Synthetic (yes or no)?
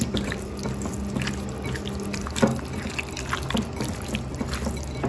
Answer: no